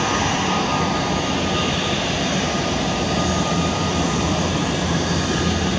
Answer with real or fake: fake